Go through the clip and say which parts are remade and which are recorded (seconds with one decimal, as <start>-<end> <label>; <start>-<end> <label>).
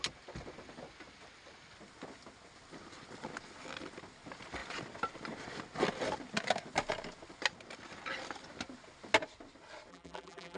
0.0-9.9 recorded; 9.9-10.6 remade